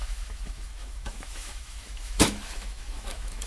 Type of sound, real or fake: fake